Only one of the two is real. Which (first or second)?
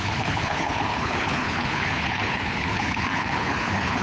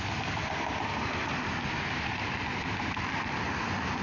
second